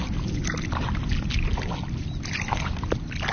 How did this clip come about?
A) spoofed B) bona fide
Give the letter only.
B